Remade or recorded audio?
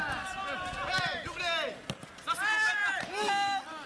recorded